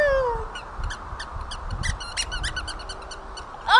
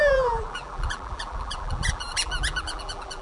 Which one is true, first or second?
first